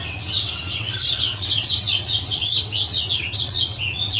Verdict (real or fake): fake